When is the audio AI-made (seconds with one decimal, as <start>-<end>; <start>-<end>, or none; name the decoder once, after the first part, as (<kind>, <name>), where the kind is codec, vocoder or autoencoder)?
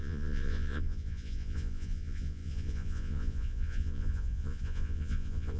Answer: 0.0-5.6 (vocoder, Vocos)